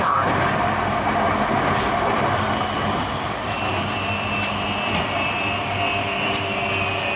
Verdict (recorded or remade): recorded